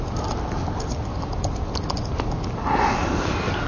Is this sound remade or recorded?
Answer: recorded